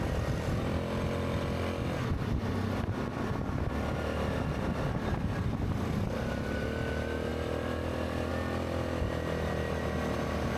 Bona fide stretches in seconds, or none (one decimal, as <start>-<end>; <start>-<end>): 0.0-10.6